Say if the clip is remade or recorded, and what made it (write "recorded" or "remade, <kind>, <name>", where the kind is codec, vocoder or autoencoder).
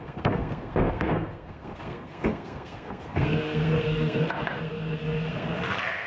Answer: remade, codec, SNAC